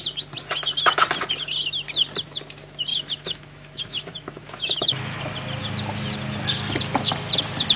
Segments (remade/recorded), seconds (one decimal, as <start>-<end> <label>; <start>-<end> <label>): 0.0-2.9 recorded; 2.9-5.2 remade; 5.2-7.8 recorded